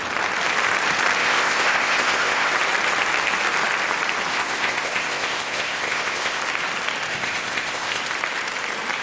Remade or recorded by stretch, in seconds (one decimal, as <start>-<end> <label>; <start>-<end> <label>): 0.0-1.2 recorded; 1.2-2.5 remade; 2.5-4.3 recorded; 4.3-6.4 remade; 6.4-7.1 recorded; 7.1-8.0 remade; 8.0-9.0 recorded